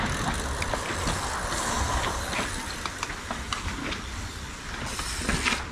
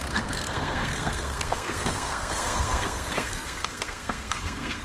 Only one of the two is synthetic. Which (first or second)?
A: second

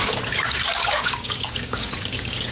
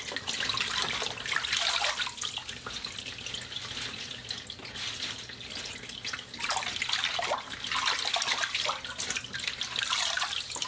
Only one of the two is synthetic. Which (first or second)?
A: first